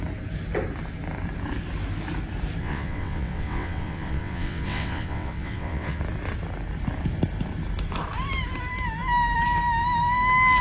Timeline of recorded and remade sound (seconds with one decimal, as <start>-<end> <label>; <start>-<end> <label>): 0.0-2.6 recorded; 2.6-6.0 remade; 6.0-10.6 recorded